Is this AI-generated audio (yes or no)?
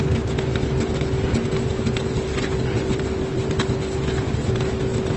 no